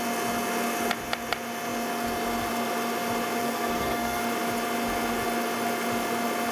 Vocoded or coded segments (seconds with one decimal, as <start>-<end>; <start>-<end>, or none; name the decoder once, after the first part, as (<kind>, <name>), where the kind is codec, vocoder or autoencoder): 3.4-4.2 (codec, SNAC)

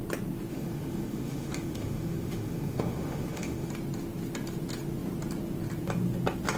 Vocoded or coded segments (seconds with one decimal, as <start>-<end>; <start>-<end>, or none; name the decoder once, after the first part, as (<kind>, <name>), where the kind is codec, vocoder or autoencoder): 0.5-3.7 (autoencoder, DAC-VAE)